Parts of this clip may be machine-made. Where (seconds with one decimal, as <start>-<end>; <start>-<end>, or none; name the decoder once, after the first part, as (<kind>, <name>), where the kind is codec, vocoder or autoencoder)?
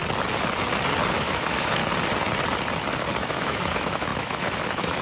1.2-1.8 (autoencoder, DAC-VAE); 3.1-5.0